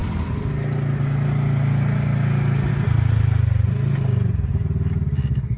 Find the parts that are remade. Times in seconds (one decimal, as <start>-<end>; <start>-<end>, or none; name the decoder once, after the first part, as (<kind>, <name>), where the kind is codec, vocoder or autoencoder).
none